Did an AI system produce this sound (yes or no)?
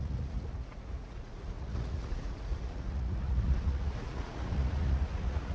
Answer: yes